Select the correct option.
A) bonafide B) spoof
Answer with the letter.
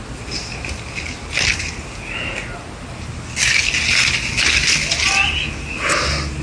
A